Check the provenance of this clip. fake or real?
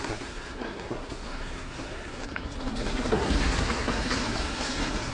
fake